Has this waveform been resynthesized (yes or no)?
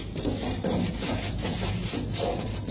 no